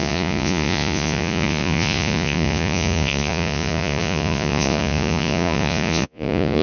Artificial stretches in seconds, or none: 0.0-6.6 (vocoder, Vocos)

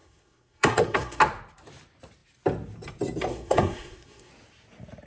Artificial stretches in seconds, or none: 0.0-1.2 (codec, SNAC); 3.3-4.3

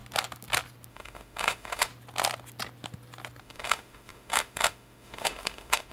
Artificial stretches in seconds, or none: 0.9-1.9 (autoencoder, DAC-VAE); 3.4-5.9

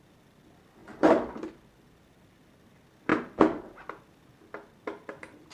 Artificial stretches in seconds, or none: 0.8-1.3 (vocoder, BigVGAN v2); 3.1-3.7